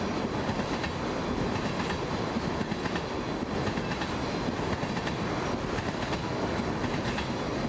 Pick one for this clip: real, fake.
real